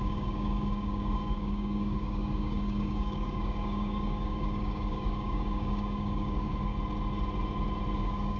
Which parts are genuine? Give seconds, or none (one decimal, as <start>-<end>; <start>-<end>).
6.7-8.0